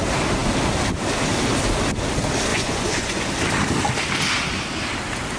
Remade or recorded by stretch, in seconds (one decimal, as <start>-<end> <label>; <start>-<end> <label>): 0.0-2.5 recorded; 2.5-3.3 remade; 3.3-5.4 recorded